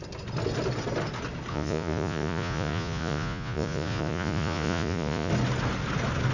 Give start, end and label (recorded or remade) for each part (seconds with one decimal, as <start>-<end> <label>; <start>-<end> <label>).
0.0-1.5 recorded; 1.5-5.3 remade; 5.3-6.3 recorded